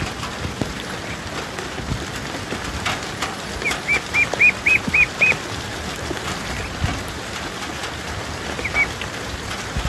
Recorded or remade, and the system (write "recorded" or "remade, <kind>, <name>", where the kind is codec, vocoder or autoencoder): recorded